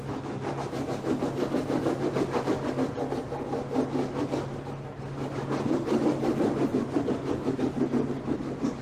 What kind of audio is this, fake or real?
real